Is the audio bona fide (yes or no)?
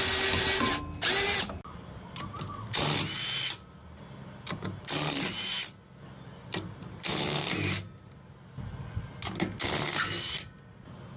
yes